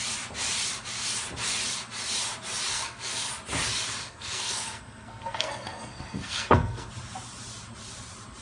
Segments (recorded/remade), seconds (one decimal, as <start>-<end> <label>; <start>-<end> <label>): 0.0-2.7 recorded; 2.7-3.3 remade; 3.3-4.0 recorded; 4.0-6.9 remade; 6.9-8.4 recorded